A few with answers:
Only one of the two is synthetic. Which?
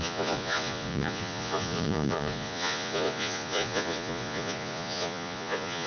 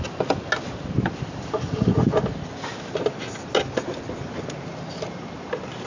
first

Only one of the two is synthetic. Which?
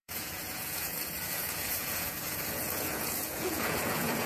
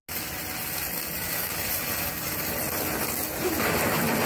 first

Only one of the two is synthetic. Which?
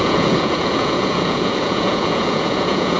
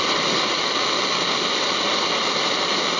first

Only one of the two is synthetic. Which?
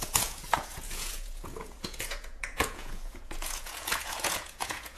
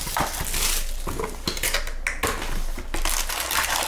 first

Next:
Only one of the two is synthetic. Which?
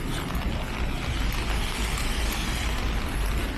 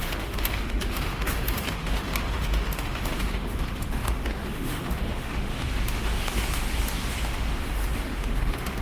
second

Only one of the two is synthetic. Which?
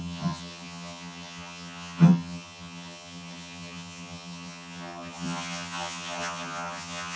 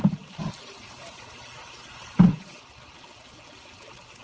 first